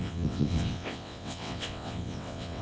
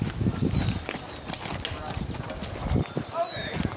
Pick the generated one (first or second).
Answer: first